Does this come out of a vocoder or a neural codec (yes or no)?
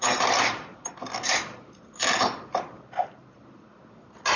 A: no